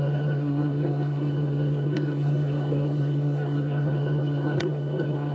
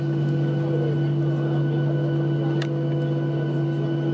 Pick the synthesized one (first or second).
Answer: first